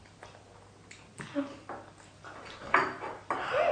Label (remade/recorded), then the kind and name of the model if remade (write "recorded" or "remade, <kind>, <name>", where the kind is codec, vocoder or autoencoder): recorded